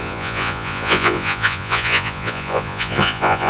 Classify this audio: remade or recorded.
remade